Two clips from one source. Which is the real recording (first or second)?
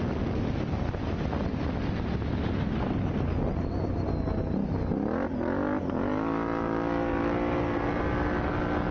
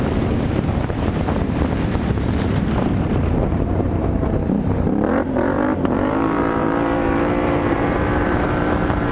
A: first